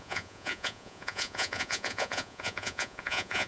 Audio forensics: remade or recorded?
remade